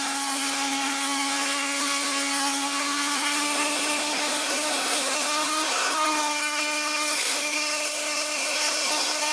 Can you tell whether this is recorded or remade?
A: remade